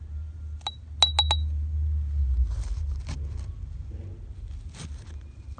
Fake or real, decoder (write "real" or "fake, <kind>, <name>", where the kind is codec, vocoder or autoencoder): real